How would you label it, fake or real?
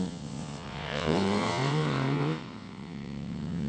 fake